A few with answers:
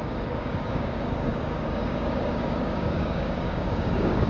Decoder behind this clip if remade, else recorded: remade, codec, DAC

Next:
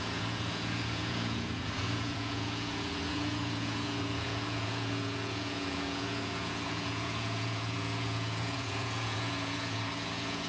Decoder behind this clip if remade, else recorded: remade, vocoder, Vocos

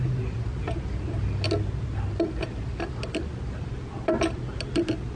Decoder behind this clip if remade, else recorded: recorded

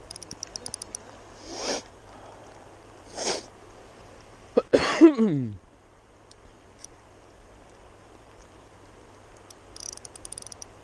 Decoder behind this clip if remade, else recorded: recorded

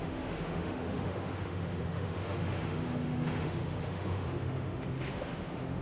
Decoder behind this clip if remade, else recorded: remade, autoencoder, DAC-VAE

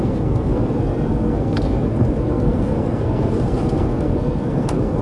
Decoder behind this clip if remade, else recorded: remade, codec, SNAC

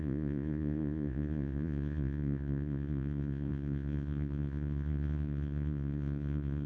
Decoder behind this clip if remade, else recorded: remade, vocoder, Vocos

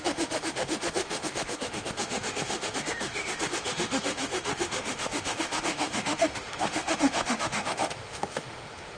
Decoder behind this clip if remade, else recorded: remade, autoencoder, DAC-VAE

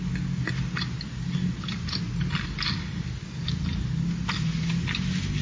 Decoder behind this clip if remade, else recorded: recorded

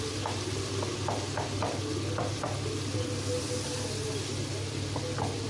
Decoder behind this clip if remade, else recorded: recorded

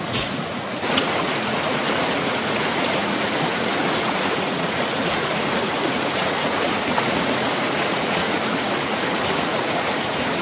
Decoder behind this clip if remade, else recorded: remade, vocoder, Vocos